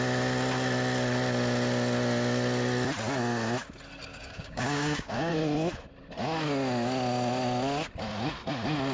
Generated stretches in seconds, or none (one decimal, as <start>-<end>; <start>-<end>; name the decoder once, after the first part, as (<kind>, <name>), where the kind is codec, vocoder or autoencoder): 4.1-5.3 (codec, DAC)